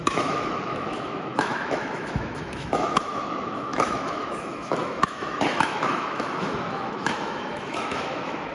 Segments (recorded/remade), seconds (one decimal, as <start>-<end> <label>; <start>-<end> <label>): 0.0-8.5 remade